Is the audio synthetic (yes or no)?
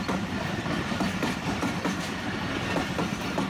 yes